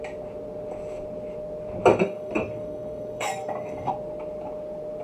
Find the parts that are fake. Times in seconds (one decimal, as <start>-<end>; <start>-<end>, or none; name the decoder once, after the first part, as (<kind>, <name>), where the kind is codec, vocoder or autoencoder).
1.9-3.9 (codec, DAC)